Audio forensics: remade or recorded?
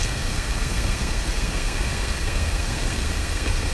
remade